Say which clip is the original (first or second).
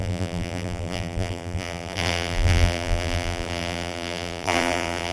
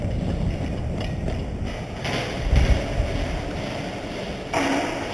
second